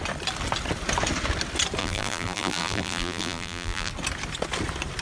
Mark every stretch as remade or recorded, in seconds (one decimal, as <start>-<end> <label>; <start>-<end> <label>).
0.0-1.8 recorded; 1.8-3.9 remade; 3.9-5.0 recorded